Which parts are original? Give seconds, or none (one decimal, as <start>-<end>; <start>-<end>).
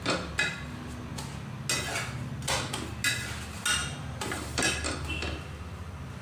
0.0-3.8; 4.6-6.2